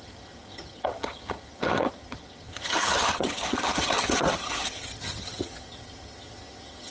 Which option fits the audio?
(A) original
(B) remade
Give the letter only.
B